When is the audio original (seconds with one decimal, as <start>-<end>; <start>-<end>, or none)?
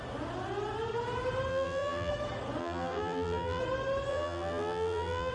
0.0-1.5; 2.1-2.6; 3.6-4.1